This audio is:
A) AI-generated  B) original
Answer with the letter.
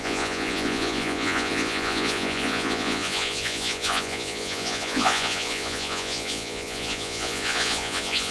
A